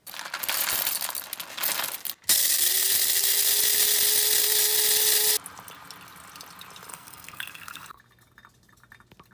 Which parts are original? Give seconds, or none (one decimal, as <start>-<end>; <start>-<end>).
0.0-6.9; 8.0-9.3